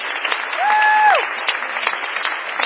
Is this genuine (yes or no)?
yes